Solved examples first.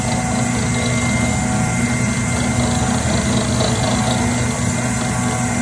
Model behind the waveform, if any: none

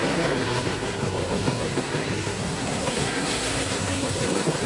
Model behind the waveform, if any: codec, SNAC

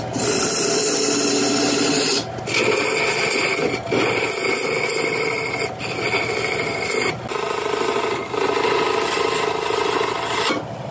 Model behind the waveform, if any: none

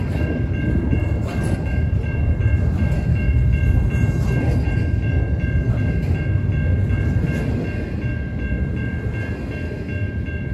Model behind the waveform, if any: none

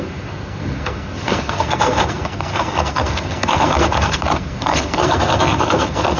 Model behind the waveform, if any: codec, SNAC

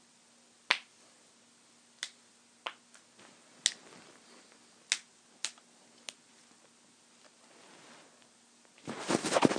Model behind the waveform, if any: none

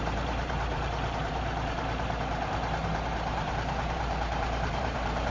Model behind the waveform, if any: vocoder, BigVGAN v2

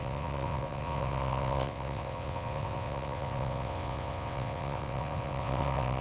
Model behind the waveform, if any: vocoder, WaveNeXt